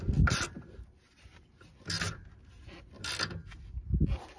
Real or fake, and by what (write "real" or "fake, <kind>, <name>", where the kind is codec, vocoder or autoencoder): real